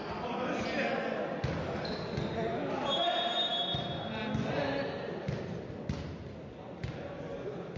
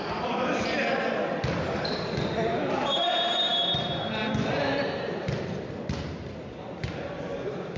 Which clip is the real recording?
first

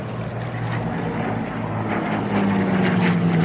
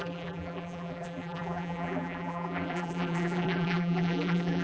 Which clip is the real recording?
first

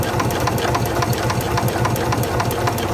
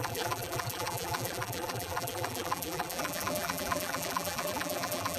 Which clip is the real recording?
first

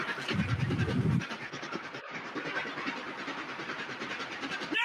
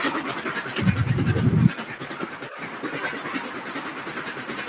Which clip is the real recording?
second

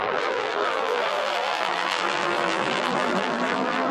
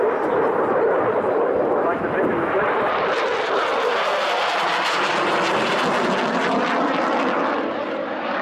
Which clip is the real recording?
second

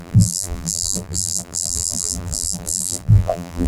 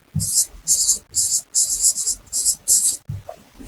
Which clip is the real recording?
second